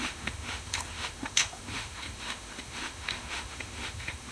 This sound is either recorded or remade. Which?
remade